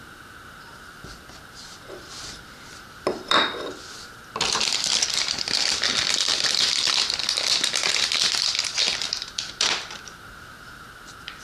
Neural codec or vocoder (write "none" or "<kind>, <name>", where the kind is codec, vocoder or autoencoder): vocoder, BigVGAN v2